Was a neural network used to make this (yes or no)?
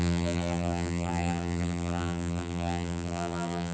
yes